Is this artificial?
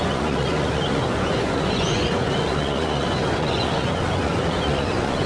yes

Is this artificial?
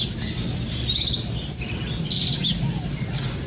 no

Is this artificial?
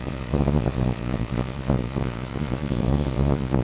yes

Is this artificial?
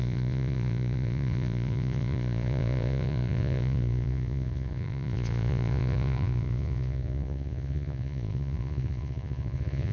yes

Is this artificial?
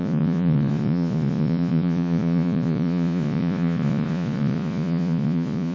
yes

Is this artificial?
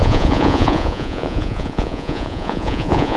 yes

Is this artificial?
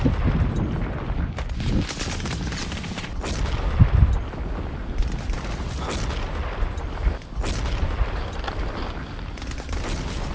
no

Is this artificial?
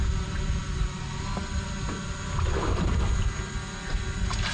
no